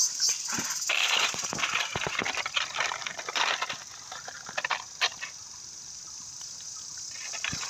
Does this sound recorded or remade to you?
recorded